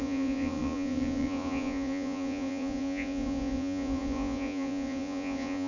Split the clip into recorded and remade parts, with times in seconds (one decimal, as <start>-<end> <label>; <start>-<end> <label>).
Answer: 0.0-5.7 remade